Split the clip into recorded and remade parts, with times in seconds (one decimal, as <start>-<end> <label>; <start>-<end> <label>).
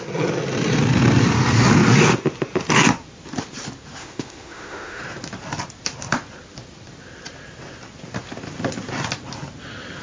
0.0-4.0 recorded; 4.0-5.0 remade; 5.0-10.0 recorded